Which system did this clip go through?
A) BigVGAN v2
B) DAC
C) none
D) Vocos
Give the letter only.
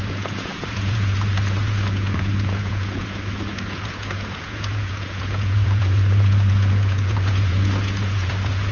D